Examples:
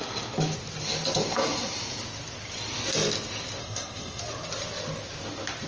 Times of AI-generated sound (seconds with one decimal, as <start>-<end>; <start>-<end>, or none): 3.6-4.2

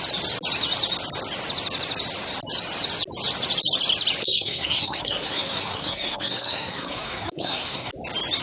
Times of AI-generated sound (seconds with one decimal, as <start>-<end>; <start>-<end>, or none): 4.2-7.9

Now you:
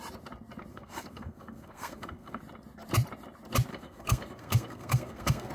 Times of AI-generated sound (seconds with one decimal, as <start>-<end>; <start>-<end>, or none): 0.7-2.4; 3.7-5.5

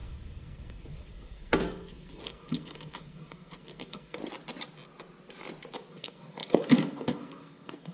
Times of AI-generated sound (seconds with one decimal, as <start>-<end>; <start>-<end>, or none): 0.0-4.2; 5.9-7.9

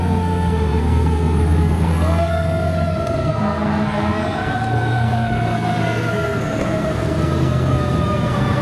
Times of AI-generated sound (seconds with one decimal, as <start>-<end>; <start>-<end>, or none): 0.0-8.6

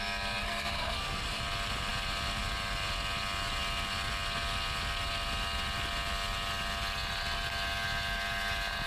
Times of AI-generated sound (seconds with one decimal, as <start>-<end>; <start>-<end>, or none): 0.4-1.4

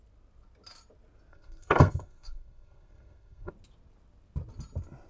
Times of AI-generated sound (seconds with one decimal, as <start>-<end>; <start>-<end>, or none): 1.3-3.5